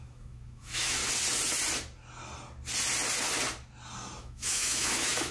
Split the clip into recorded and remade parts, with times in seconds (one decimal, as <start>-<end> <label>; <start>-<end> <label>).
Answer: 0.0-1.0 remade; 1.0-4.2 recorded; 4.2-5.3 remade